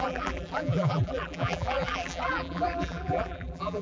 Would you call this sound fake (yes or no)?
yes